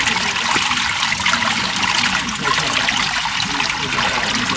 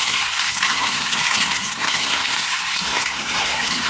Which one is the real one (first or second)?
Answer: first